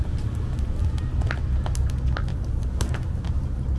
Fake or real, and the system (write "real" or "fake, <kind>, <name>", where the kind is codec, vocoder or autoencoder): real